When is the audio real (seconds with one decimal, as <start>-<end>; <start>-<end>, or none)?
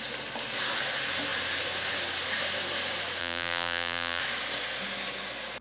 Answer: 0.0-3.2; 4.2-5.6